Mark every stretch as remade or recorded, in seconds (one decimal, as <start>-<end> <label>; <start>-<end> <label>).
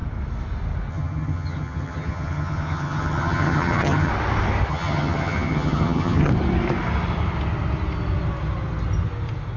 0.0-0.9 recorded; 0.9-4.1 remade; 4.1-4.7 recorded; 4.7-6.3 remade; 6.3-9.6 recorded